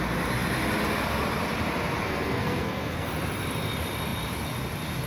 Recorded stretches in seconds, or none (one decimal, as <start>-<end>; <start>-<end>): 0.0-2.0; 3.1-5.1